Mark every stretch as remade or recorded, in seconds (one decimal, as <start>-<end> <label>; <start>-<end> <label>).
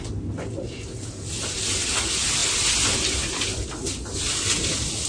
0.0-5.1 recorded